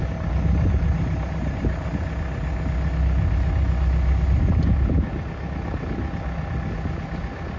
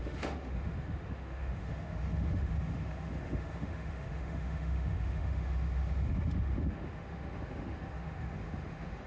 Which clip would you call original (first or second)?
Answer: first